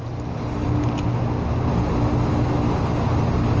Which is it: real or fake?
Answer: real